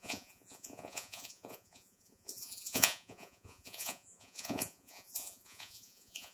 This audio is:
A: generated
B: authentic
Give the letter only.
A